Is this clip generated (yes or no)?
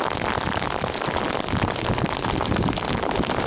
no